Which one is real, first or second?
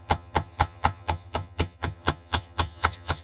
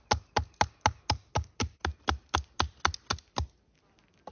second